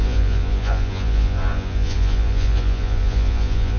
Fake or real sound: fake